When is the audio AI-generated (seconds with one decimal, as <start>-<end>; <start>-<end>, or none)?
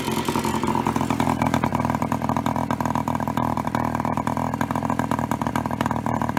none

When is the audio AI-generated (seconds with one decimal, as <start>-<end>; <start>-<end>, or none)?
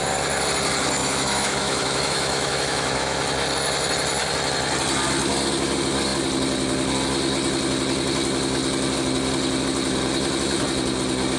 1.0-3.2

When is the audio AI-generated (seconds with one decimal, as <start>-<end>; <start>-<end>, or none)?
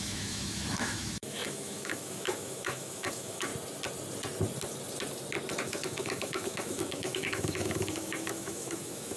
0.0-3.5; 5.6-9.2